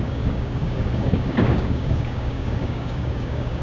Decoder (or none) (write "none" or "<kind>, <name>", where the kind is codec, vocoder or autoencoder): codec, DAC